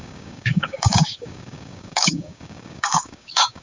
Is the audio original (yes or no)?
no